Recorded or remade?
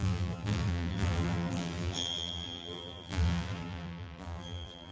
remade